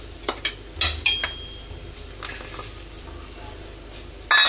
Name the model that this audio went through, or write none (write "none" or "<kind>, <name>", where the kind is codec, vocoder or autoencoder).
none